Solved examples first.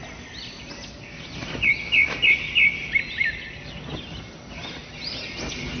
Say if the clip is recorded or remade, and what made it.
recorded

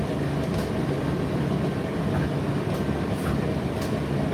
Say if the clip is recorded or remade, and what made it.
recorded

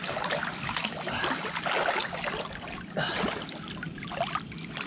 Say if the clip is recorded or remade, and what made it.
recorded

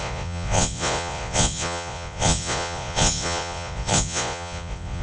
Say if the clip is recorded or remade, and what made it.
remade, vocoder, Vocos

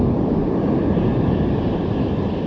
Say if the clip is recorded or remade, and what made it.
recorded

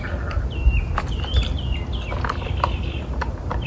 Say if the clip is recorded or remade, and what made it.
recorded